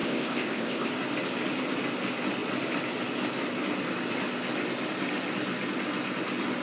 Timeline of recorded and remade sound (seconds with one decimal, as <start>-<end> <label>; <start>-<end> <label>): 0.0-0.9 remade; 0.9-6.6 recorded